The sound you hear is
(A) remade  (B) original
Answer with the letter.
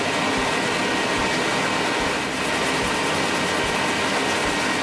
B